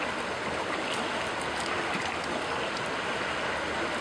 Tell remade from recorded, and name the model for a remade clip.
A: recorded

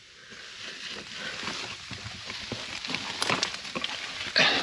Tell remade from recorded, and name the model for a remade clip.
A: recorded